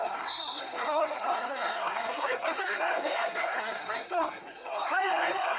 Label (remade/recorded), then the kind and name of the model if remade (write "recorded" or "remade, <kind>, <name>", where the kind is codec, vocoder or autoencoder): remade, codec, SNAC